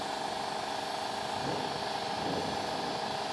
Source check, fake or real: real